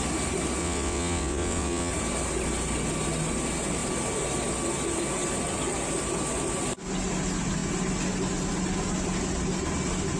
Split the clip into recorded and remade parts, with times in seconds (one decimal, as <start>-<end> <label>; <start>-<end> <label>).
0.0-0.6 recorded; 0.6-1.9 remade; 1.9-10.2 recorded